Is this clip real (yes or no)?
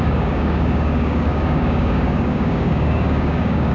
no